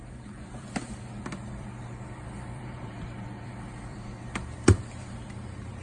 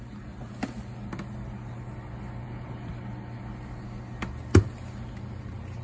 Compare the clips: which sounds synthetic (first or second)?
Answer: first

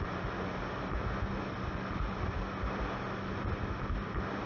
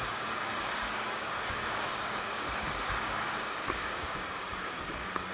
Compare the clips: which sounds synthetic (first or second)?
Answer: second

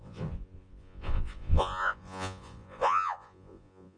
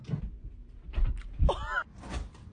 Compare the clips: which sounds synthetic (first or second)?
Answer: first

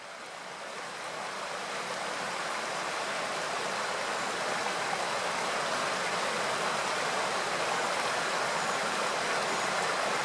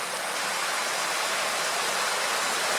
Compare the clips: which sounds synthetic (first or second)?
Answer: first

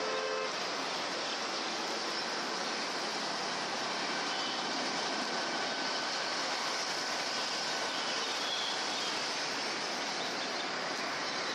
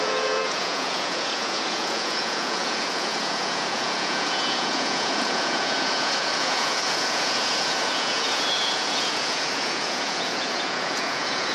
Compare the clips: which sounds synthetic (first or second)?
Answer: second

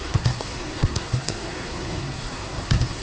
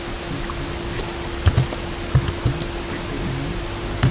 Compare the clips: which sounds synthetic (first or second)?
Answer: first